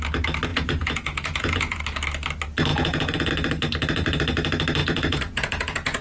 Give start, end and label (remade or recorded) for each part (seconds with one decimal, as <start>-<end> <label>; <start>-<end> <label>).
0.0-0.5 recorded; 0.5-1.8 remade; 1.8-2.7 recorded; 2.7-3.3 remade; 3.3-4.8 recorded; 4.8-6.0 remade